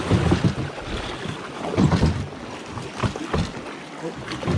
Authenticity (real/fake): real